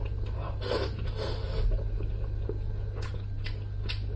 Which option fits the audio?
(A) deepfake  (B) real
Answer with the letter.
B